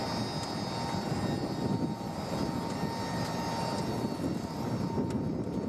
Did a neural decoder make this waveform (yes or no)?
no